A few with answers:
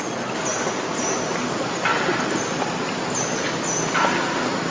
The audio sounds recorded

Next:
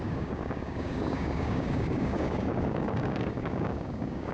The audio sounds remade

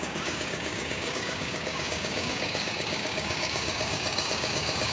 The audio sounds remade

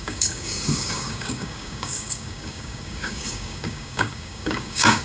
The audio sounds remade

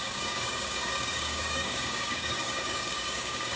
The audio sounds remade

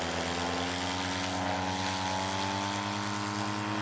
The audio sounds recorded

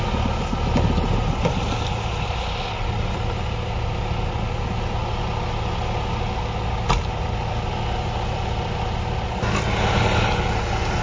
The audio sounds recorded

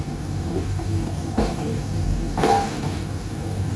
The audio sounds remade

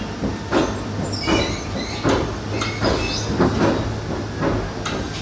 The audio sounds recorded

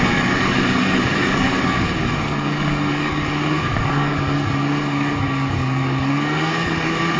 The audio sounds remade